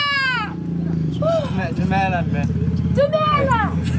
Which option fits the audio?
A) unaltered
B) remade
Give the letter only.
A